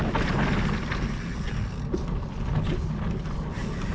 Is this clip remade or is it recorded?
recorded